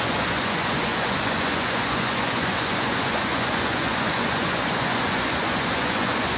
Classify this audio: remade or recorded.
remade